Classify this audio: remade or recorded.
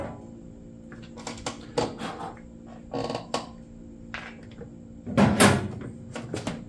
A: recorded